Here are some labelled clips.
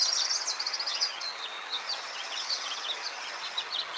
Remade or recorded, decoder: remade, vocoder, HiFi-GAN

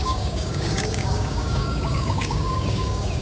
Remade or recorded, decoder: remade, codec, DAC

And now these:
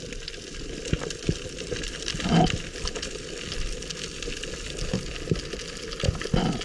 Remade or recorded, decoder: recorded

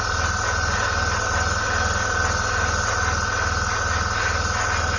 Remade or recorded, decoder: recorded